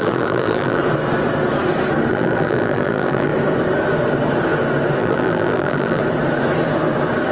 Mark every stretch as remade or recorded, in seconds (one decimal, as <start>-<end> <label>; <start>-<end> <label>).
0.0-0.8 remade; 0.8-2.1 recorded; 2.1-3.3 remade; 3.3-5.0 recorded; 5.0-6.0 remade; 6.0-7.3 recorded